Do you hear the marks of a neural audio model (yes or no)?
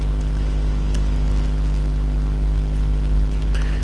no